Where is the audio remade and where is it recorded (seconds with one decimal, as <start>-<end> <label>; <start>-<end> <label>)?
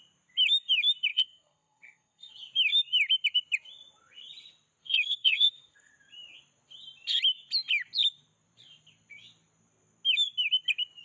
0.0-1.1 recorded; 1.1-2.3 remade; 2.3-4.8 recorded; 4.8-5.9 remade; 5.9-11.0 recorded